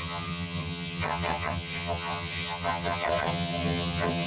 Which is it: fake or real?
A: fake